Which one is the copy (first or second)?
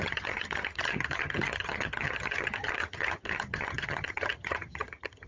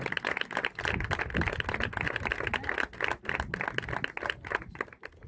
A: first